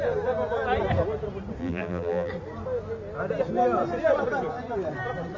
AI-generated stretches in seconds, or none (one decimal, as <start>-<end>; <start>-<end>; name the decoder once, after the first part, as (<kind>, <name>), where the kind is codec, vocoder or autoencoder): 1.6-2.3 (vocoder, BigVGAN v2)